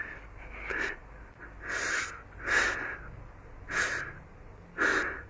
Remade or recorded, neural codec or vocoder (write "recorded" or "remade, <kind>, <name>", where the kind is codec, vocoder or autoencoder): recorded